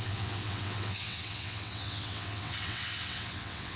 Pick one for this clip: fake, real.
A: fake